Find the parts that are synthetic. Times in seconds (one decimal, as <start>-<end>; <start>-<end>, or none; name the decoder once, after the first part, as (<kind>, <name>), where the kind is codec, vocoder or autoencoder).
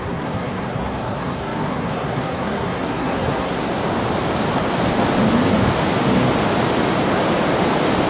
0.0-3.7 (codec, SNAC)